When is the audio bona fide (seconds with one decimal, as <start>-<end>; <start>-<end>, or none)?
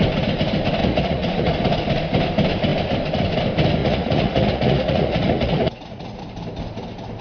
0.0-0.8; 1.5-3.8; 6.2-7.2